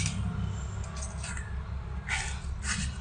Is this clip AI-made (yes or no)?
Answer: no